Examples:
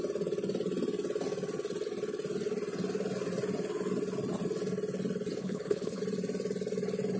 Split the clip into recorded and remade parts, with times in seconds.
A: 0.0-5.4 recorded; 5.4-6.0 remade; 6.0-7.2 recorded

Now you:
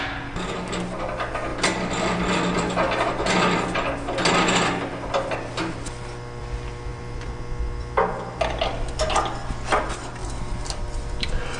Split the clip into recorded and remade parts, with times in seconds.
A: 0.0-6.9 recorded; 6.9-9.1 remade; 9.1-10.2 recorded; 10.2-11.6 remade

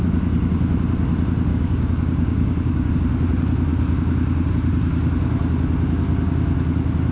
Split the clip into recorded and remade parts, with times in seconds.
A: 0.0-1.5 recorded; 1.5-2.9 remade; 2.9-7.1 recorded

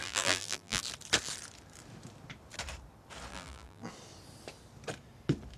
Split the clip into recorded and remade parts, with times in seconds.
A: 0.0-0.8 remade; 0.8-3.3 recorded; 3.3-3.9 remade; 3.9-5.6 recorded

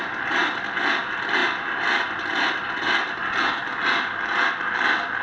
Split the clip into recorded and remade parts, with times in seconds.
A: 0.0-5.2 recorded